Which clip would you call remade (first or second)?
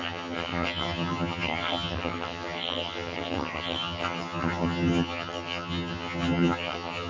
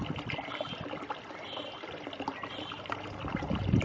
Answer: first